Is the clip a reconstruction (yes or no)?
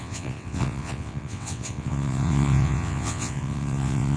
yes